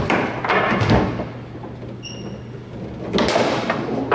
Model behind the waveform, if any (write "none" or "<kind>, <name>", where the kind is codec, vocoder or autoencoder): none